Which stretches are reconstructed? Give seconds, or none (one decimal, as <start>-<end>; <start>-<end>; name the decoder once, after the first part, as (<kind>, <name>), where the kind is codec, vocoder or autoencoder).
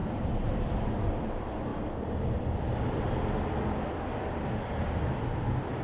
0.0-1.0 (vocoder, BigVGAN v2)